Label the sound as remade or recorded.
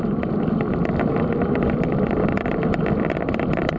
recorded